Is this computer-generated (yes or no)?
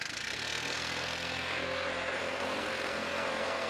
yes